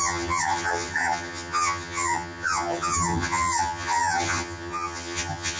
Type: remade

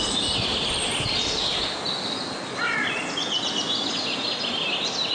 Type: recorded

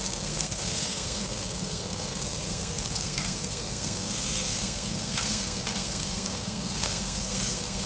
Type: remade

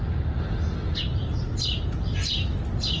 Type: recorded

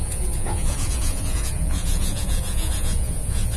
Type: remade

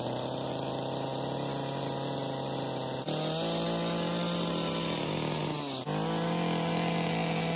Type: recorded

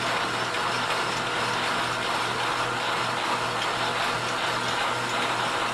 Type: recorded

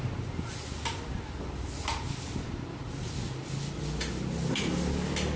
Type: recorded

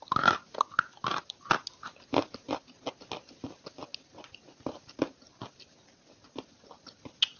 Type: recorded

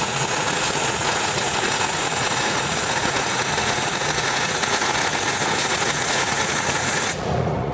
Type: remade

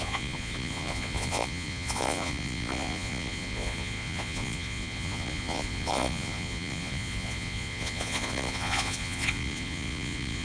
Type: remade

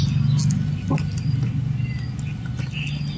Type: recorded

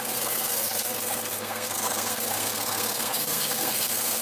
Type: remade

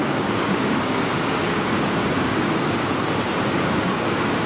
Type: remade